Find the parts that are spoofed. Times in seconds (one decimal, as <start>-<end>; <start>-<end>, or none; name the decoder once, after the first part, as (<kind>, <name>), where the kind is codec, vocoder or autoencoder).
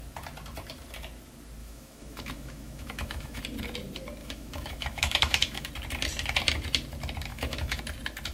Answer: 1.6-3.4 (autoencoder, DAC-VAE); 4.2-5.7; 7.3-7.8